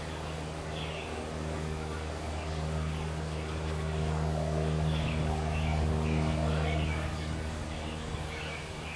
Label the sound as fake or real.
fake